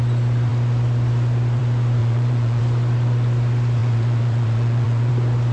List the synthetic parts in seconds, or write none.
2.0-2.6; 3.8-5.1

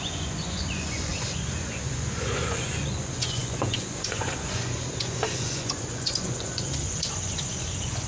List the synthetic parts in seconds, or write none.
0.0-8.1

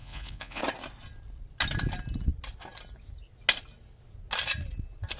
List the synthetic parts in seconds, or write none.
0.0-0.6

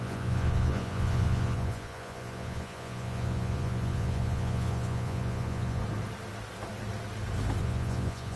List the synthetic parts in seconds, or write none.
0.0-5.8; 7.6-8.4